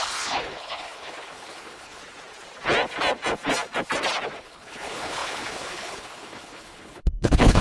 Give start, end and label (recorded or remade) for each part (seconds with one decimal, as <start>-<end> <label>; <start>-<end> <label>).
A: 0.0-2.0 remade; 2.0-4.4 recorded; 4.4-7.6 remade